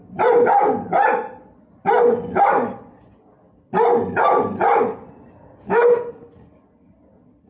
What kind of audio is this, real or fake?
fake